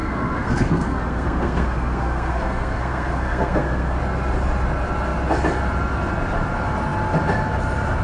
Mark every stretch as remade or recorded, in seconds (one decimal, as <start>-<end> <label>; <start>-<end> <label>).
0.0-4.0 remade; 4.0-8.0 recorded